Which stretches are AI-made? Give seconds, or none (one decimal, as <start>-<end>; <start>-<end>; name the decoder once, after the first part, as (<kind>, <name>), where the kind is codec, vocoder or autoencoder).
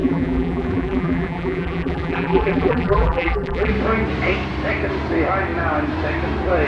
0.0-3.7 (vocoder, BigVGAN v2)